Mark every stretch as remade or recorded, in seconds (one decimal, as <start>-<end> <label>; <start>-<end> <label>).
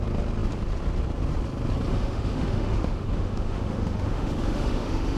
0.0-1.9 recorded; 1.9-5.2 remade